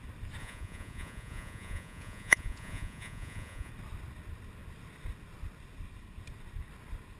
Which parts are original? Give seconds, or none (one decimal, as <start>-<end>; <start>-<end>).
0.0-0.4; 3.7-7.2